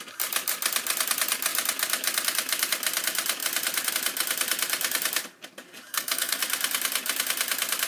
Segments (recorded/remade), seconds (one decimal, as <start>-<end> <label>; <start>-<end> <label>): 0.0-5.9 recorded; 5.9-6.4 remade; 6.4-7.9 recorded